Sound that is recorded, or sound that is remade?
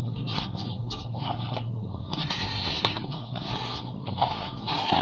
remade